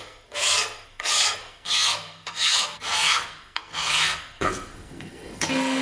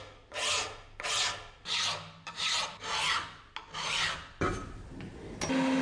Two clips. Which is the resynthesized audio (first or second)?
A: first